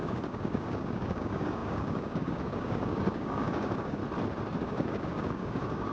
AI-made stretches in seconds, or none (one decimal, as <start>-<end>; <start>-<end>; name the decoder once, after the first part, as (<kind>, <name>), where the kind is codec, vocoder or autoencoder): 0.0-4.0 (codec, DAC); 4.6-5.9